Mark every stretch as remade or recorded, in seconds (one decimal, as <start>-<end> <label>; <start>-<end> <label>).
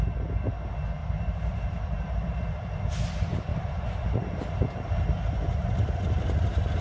0.0-1.0 recorded; 1.0-2.8 remade; 2.8-3.5 recorded; 3.5-4.4 remade; 4.4-6.8 recorded